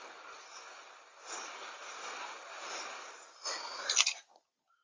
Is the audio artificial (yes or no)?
no